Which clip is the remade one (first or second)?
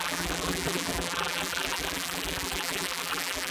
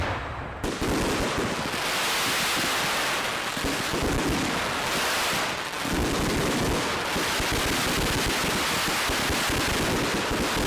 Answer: first